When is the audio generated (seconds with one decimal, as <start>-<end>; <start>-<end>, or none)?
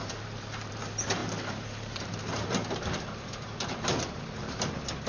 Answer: 0.0-5.1